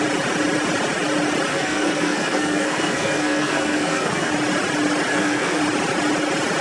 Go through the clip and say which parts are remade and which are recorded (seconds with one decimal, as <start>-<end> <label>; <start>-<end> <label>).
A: 0.0-1.5 recorded; 1.5-4.3 remade; 4.3-5.1 recorded; 5.1-5.6 remade; 5.6-6.6 recorded